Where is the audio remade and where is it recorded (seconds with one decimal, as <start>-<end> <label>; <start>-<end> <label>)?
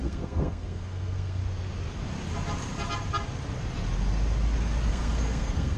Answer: 0.0-1.4 remade; 1.4-4.9 recorded; 4.9-5.8 remade